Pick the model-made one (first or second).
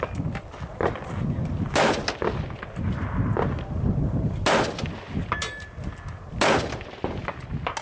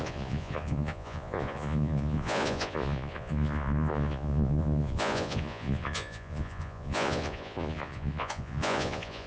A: second